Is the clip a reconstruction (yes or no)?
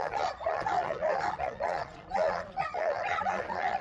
yes